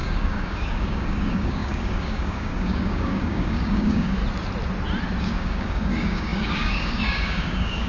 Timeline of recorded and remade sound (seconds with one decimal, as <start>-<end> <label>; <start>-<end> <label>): 0.0-4.2 remade; 4.2-5.2 recorded; 5.2-7.9 remade